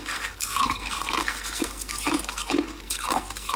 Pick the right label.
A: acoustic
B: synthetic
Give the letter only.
B